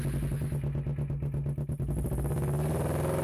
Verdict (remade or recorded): recorded